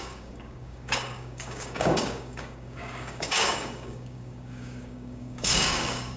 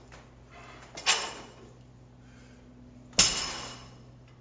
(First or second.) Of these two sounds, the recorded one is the second